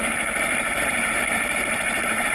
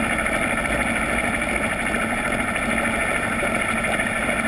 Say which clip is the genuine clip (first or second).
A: second